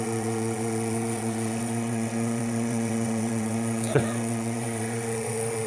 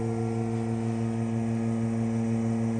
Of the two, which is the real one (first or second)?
second